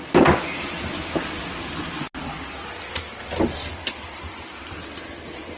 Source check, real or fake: real